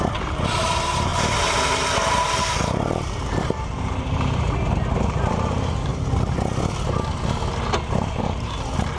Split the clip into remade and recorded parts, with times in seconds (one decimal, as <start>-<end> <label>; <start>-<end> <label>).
0.0-1.1 remade; 1.1-2.4 recorded; 2.4-5.9 remade; 5.9-8.2 recorded; 8.2-9.0 remade